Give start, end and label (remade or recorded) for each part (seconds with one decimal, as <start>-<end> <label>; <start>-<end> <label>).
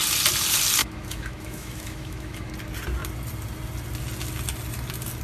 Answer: 0.0-0.8 recorded; 0.8-2.5 remade; 2.5-5.2 recorded